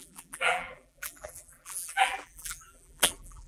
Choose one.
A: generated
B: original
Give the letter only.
A